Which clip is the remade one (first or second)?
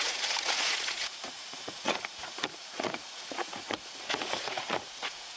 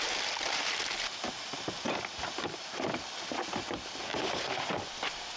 first